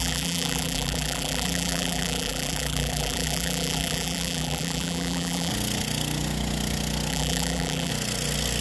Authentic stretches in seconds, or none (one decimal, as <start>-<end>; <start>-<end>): 5.5-7.1; 7.9-8.6